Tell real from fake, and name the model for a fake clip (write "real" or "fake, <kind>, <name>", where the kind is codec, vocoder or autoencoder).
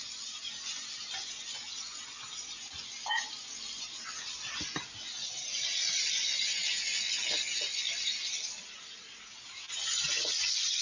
real